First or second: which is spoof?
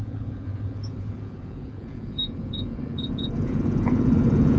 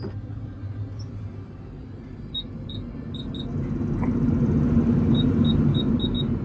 first